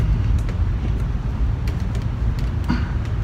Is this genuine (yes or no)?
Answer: yes